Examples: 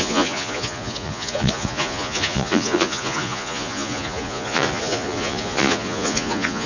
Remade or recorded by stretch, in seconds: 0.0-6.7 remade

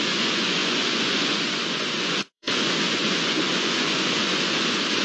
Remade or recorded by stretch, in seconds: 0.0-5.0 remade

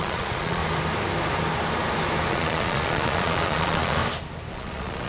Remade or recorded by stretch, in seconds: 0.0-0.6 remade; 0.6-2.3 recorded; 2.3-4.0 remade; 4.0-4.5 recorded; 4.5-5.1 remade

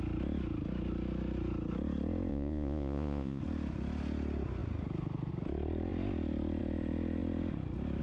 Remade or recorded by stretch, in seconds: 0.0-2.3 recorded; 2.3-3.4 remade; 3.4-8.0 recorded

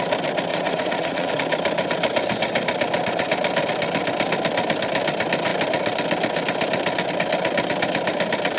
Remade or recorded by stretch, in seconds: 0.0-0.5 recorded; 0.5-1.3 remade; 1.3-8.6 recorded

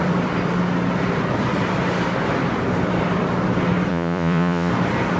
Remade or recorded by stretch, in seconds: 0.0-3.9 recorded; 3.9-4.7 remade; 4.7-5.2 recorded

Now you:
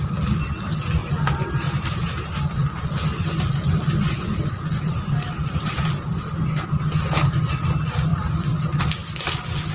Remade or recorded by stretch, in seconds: 0.0-9.7 recorded